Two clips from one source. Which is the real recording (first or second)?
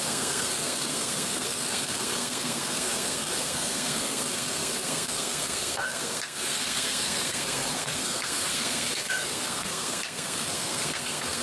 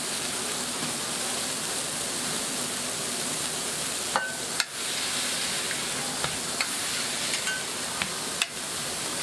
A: second